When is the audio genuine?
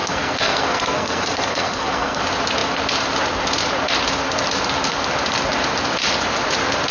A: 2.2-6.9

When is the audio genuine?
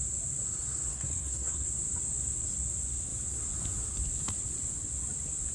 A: 0.0-0.9; 1.7-5.5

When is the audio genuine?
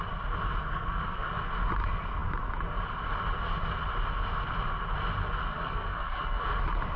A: 0.0-0.6; 1.3-5.5; 6.4-7.0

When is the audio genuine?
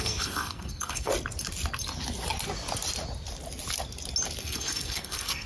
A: 1.1-4.4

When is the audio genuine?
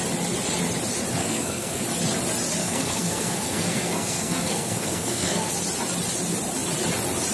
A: 0.0-1.2; 1.8-2.6; 5.5-7.3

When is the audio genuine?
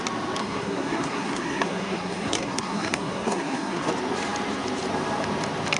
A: 0.0-0.4; 3.9-5.8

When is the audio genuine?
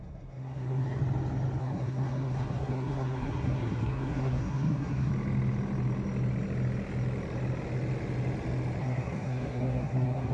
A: 1.0-1.6; 5.1-8.8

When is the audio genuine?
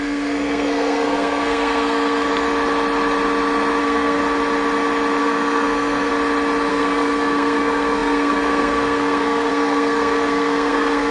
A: 2.3-3.8; 4.2-5.2; 6.1-6.7